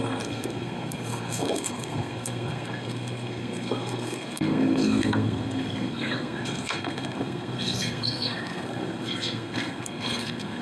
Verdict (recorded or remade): remade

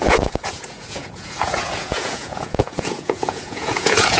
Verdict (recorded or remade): remade